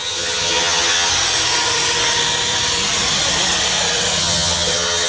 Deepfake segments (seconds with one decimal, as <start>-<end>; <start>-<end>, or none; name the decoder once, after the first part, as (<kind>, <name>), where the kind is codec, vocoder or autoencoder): 0.0-1.1 (vocoder, HiFi-GAN); 4.2-5.1